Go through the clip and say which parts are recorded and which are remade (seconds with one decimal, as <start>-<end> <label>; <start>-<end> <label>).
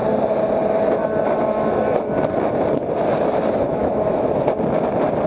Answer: 0.0-3.7 recorded; 3.7-4.4 remade; 4.4-5.3 recorded